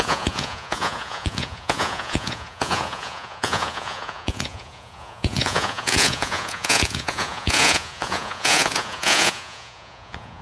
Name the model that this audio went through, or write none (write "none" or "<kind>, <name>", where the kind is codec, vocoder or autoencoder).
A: vocoder, Vocos